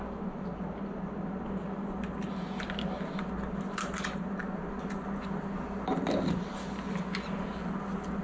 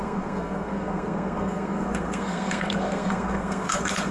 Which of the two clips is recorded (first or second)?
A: first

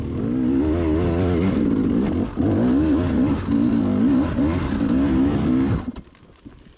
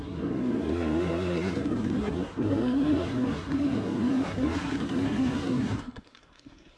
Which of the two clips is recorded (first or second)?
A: first